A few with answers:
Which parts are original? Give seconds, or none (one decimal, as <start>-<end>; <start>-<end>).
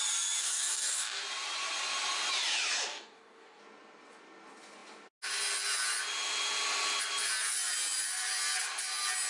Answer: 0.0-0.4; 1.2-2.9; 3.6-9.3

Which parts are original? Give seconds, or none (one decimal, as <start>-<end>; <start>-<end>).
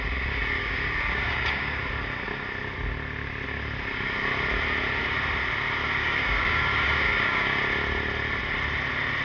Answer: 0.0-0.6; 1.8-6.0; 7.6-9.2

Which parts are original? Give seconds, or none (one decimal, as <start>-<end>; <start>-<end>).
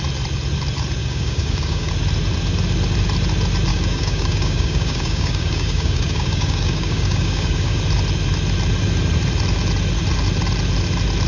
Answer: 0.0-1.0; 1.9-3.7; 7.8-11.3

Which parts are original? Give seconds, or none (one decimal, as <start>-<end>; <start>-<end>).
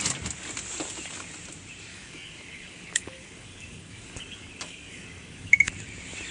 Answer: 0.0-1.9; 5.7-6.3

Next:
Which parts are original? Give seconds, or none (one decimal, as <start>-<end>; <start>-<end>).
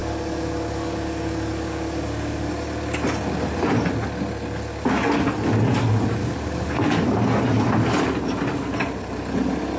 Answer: 2.5-6.2; 7.0-9.8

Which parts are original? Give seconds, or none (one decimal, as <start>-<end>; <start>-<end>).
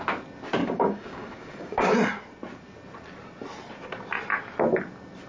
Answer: 0.0-0.6; 1.9-5.3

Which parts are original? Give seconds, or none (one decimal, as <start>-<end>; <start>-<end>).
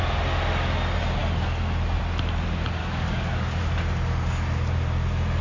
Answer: 0.0-2.8; 3.6-5.4